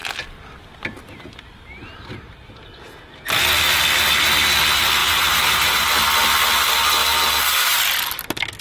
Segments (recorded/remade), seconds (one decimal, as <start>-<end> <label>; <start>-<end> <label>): 0.0-5.0 recorded; 5.0-5.9 remade; 5.9-7.0 recorded; 7.0-7.8 remade; 7.8-8.6 recorded